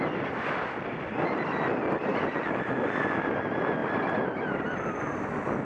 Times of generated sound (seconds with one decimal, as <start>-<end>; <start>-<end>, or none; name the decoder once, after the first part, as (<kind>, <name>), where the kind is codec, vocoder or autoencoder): 2.1-2.9 (vocoder, BigVGAN v2); 3.8-4.9

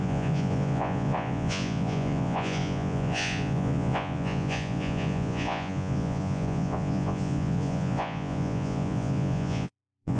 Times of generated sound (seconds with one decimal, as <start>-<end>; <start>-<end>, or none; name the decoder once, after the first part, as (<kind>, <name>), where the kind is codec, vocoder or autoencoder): 0.0-10.2 (vocoder, Vocos)

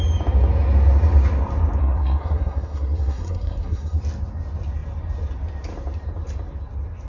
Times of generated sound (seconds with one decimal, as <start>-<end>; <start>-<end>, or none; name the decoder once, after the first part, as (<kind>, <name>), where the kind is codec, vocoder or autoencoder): 1.8-4.0 (codec, SNAC)

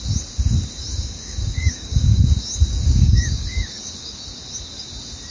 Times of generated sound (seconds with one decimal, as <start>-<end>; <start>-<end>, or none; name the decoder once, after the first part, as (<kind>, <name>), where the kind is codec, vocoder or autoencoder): 0.9-2.2 (codec, DAC); 2.7-4.2

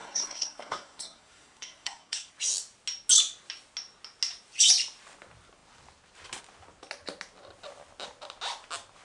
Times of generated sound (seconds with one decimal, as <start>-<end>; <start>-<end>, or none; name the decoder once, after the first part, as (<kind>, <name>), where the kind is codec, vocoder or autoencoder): 0.0-2.3 (codec, SNAC)